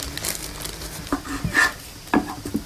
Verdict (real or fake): real